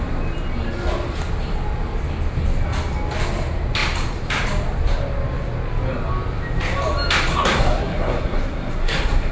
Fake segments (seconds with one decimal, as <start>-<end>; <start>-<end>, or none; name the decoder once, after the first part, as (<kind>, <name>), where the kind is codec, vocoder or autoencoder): 7.3-9.3 (codec, SNAC)